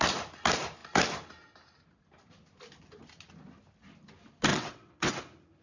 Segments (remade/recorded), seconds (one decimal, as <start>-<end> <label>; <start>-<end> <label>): 0.0-4.5 recorded; 4.5-5.1 remade; 5.1-5.6 recorded